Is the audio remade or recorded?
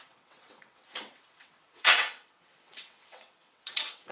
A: remade